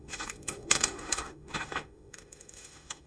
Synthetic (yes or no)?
yes